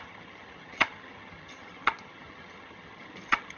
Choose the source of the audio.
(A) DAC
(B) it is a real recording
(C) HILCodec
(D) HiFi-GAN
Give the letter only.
D